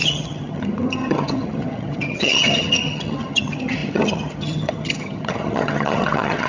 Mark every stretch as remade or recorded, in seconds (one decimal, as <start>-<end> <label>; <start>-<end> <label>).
0.0-6.5 remade